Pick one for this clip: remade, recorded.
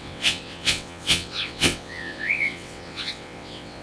remade